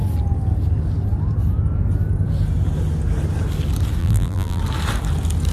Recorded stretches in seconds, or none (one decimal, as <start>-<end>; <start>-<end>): 0.0-4.0; 4.6-5.5

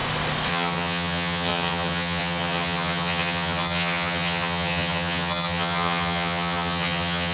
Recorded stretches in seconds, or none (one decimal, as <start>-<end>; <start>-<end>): 0.0-0.5

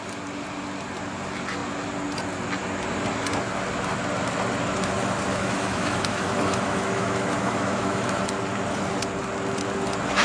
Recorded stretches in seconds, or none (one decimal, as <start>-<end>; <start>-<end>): 0.0-5.3; 8.4-10.2

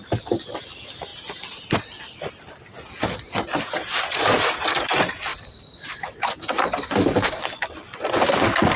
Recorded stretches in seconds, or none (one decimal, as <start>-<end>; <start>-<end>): 0.0-1.1; 2.9-5.3; 7.8-8.8

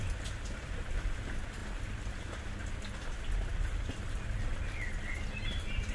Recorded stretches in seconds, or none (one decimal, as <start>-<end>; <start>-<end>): 0.0-1.6; 2.2-3.5; 4.4-5.9

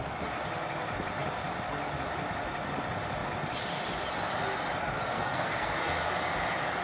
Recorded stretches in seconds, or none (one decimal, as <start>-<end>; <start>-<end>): 0.0-5.1; 6.1-6.8

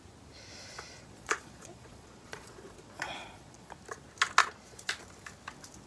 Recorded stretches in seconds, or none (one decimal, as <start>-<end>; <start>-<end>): 0.0-0.9; 3.7-4.4; 4.9-5.9